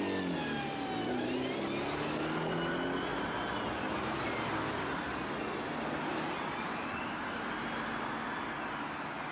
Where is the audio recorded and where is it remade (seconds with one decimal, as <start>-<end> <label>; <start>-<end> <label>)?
0.0-9.3 recorded